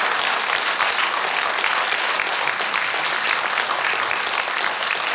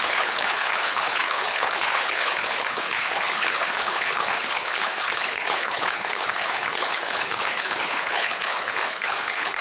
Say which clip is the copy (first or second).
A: second